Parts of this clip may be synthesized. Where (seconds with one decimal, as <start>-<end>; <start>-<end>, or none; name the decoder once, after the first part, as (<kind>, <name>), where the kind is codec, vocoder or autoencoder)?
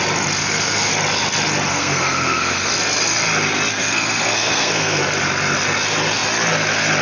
0.4-0.9 (codec, SNAC); 1.7-2.7; 3.7-5.0